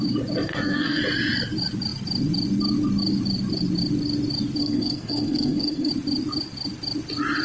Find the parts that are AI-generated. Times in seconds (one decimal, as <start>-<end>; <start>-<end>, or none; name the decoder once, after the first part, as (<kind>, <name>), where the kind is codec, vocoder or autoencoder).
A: 0.5-1.0 (codec, SNAC); 4.6-5.9